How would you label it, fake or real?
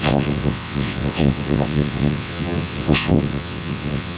fake